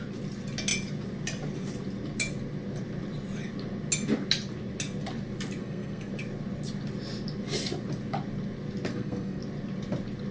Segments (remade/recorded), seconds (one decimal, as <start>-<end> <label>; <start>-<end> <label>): 0.0-5.6 recorded; 5.6-6.1 remade; 6.1-8.9 recorded; 8.9-9.4 remade; 9.4-10.3 recorded